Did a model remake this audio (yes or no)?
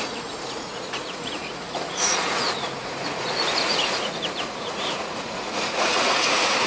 yes